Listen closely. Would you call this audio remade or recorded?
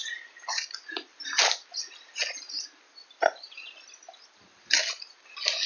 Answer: recorded